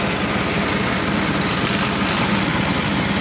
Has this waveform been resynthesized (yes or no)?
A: no